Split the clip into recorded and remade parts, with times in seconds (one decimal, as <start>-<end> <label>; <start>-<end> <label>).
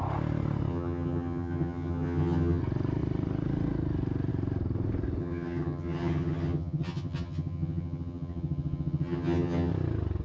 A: 0.0-0.7 recorded; 0.7-2.6 remade; 2.6-5.2 recorded; 5.2-9.7 remade; 9.7-10.2 recorded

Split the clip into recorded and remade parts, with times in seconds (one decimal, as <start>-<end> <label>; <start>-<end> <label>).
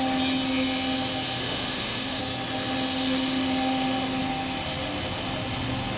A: 0.0-1.4 recorded; 1.4-2.2 remade; 2.2-6.0 recorded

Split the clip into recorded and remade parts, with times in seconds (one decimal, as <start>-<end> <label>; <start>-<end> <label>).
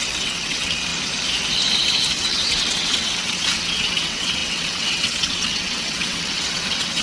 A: 0.0-0.9 remade; 0.9-2.1 recorded; 2.1-7.0 remade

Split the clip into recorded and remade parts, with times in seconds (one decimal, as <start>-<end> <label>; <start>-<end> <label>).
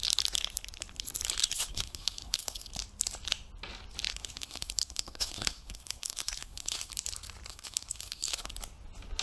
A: 0.0-1.4 recorded; 1.4-2.7 remade; 2.7-4.1 recorded; 4.1-6.9 remade; 6.9-7.5 recorded; 7.5-8.5 remade; 8.5-9.2 recorded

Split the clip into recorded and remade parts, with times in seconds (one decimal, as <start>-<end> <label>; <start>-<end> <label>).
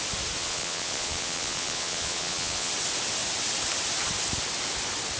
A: 0.0-0.4 recorded; 0.4-2.7 remade; 2.7-5.2 recorded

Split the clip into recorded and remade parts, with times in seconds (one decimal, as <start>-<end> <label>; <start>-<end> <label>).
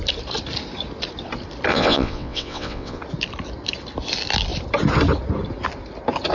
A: 0.0-1.7 recorded; 1.7-3.0 remade; 3.0-6.3 recorded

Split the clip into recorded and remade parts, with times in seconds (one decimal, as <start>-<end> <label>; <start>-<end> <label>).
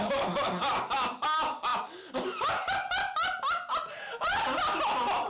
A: 0.0-5.3 recorded